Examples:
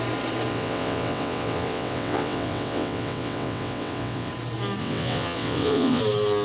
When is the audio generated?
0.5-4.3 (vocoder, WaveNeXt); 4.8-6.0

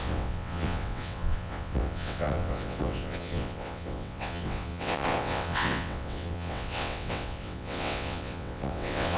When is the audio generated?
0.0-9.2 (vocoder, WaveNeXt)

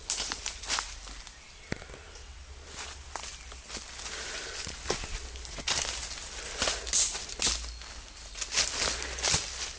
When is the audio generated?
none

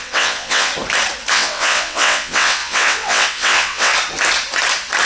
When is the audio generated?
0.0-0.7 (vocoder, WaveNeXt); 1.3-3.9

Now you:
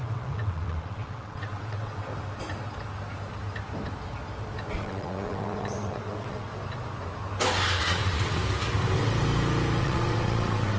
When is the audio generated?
0.0-2.1 (vocoder, WaveNeXt); 4.7-6.5; 7.8-8.4; 9.8-10.8

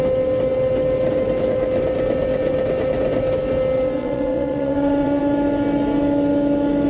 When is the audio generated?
4.0-5.2 (vocoder, WaveNeXt)

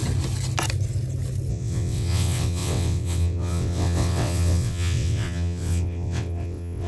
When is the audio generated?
1.5-6.9 (vocoder, WaveNeXt)

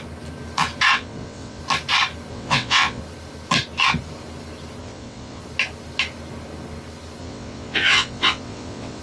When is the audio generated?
0.9-1.6 (vocoder, WaveNeXt); 2.3-3.0; 4.8-5.4; 7.2-9.0